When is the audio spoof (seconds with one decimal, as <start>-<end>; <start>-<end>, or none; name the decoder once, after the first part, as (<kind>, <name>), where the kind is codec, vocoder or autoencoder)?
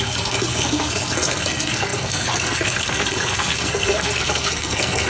0.0-5.1 (codec, SNAC)